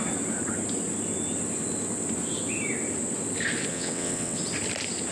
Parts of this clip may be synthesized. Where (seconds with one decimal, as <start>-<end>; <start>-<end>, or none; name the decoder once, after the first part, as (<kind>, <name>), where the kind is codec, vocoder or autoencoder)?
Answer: 3.7-4.4 (vocoder, WaveNeXt)